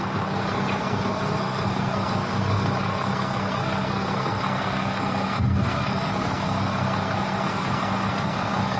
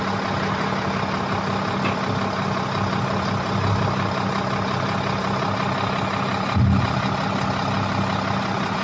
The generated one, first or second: first